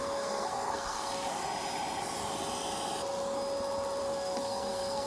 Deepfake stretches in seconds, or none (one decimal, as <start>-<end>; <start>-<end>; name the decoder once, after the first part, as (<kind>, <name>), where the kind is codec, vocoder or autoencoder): 0.0-1.4 (codec, SNAC); 4.0-5.1